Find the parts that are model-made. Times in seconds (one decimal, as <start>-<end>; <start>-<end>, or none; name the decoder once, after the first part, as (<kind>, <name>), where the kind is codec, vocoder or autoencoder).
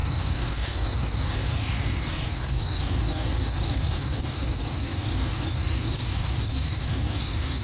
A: 0.0-7.6 (codec, DAC)